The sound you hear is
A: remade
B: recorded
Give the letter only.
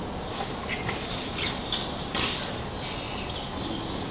B